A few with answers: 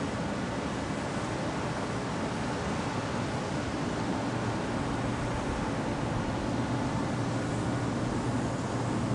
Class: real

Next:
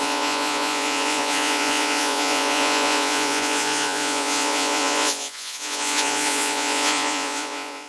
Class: fake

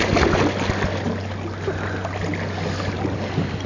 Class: real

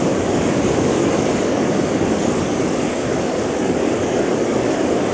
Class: fake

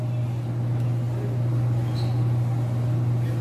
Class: real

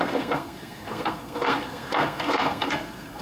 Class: fake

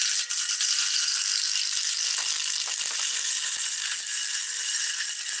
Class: fake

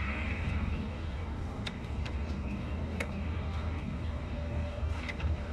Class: fake